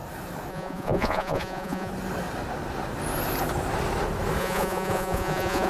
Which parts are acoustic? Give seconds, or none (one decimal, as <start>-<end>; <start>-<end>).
0.0-0.5; 1.9-4.4